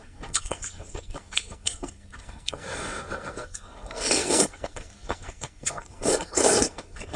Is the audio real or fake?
fake